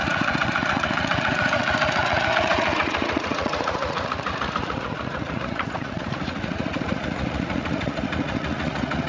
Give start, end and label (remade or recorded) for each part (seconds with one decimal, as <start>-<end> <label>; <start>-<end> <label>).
0.0-9.1 remade